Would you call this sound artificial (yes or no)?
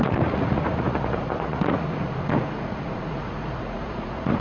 yes